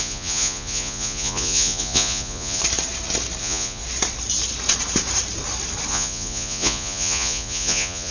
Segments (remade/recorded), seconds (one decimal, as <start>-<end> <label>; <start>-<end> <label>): 0.0-2.6 remade; 2.6-3.4 recorded; 3.4-3.8 remade; 3.8-5.9 recorded; 5.9-8.1 remade